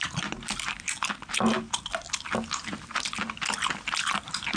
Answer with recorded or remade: recorded